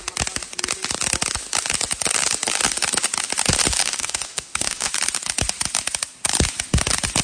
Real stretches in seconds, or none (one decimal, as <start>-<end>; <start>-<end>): 0.0-3.8; 4.9-7.2

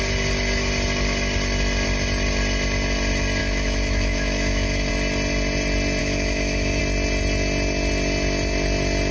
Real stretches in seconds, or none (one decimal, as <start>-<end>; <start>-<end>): 0.0-3.4; 4.9-6.0; 6.8-9.1

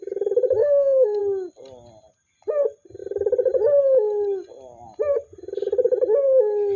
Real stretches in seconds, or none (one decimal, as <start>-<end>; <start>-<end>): 0.0-0.6; 1.2-6.8